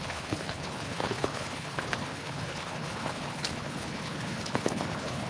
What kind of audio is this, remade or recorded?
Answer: remade